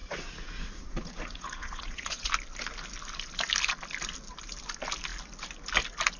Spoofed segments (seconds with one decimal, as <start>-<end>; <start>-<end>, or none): 0.0-2.3

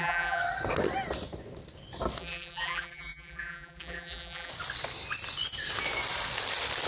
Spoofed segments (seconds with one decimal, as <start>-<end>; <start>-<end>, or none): 0.0-0.4; 2.2-4.5

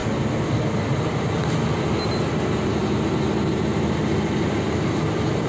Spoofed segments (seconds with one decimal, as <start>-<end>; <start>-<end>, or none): none

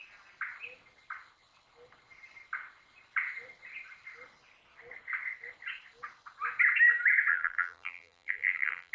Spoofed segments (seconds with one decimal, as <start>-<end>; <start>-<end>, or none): 7.3-8.9